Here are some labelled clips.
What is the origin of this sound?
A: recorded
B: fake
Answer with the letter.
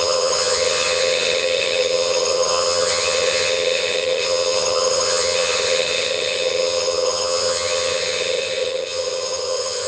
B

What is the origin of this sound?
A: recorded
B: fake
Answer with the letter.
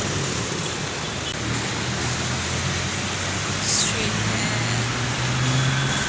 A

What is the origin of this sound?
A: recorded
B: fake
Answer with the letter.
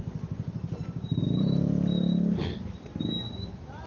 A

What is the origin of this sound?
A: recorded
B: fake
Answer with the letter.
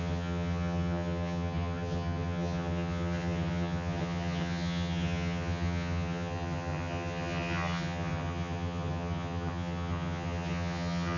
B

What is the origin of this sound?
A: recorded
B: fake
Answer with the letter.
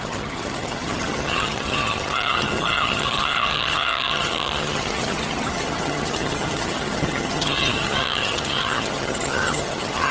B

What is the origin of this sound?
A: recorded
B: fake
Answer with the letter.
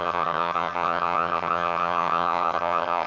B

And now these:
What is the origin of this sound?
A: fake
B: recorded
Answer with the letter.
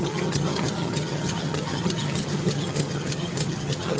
A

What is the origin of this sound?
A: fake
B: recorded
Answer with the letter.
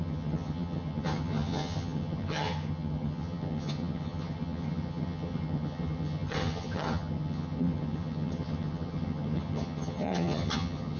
A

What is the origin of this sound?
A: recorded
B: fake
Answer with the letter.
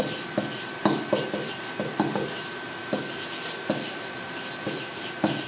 A